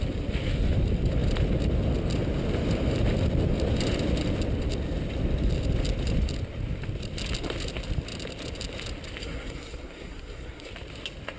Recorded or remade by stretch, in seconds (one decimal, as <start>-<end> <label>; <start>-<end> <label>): 0.0-9.2 recorded; 9.2-10.7 remade; 10.7-11.4 recorded